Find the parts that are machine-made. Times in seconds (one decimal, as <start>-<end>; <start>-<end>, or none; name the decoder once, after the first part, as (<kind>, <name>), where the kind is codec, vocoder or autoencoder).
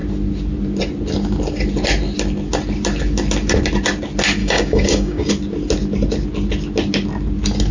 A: 4.4-5.3 (codec, DAC)